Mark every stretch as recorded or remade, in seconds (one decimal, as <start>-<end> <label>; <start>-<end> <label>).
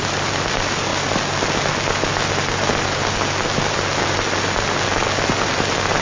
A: 0.0-6.0 recorded